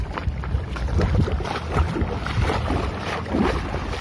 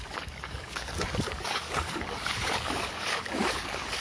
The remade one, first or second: second